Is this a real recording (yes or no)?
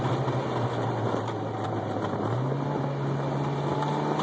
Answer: yes